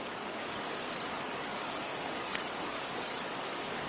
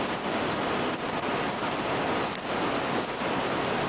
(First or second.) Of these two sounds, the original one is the second